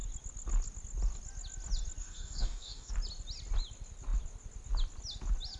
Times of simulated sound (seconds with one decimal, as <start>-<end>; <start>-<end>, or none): 2.0-2.9